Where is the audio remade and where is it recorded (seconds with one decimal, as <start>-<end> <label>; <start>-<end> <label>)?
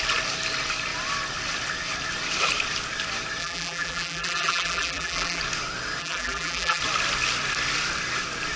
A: 0.0-3.4 recorded; 3.4-5.4 remade; 5.4-6.0 recorded; 6.0-6.8 remade; 6.8-8.6 recorded